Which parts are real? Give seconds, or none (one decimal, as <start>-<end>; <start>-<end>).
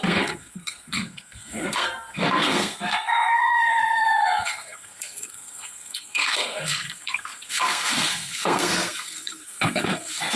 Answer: none